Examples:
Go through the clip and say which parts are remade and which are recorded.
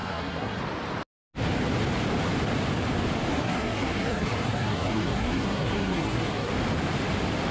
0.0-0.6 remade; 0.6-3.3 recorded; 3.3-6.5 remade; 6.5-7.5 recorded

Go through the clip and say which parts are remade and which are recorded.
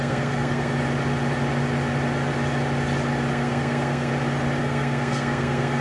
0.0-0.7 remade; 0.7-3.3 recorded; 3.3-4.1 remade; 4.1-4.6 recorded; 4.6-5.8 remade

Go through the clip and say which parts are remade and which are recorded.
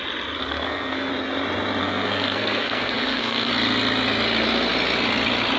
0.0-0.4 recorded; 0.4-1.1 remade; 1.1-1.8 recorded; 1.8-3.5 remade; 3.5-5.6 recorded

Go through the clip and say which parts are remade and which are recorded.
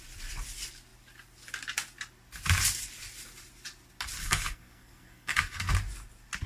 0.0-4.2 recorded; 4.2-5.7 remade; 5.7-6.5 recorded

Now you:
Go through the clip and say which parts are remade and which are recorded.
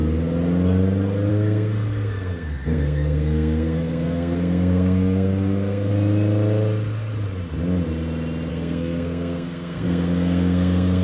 0.0-1.3 recorded; 1.3-5.9 remade; 5.9-8.5 recorded; 8.5-11.0 remade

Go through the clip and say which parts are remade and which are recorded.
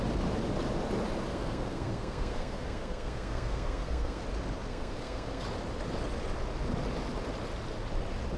0.0-1.3 recorded; 1.3-4.2 remade; 4.2-4.7 recorded; 4.7-5.4 remade; 5.4-8.4 recorded